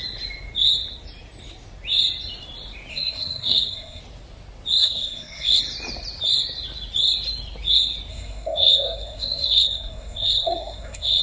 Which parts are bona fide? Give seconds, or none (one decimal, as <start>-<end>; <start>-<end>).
0.0-2.9; 4.0-4.8; 5.6-8.1

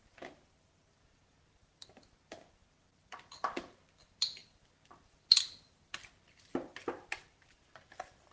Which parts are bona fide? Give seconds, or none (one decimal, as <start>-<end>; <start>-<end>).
0.0-8.3